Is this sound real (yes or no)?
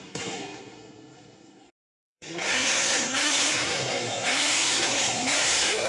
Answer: no